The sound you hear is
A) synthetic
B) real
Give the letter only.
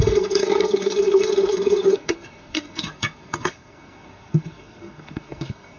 A